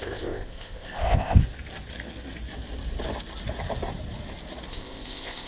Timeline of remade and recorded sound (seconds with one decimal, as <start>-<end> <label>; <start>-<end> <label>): 0.0-1.4 remade; 1.4-4.7 recorded; 4.7-5.5 remade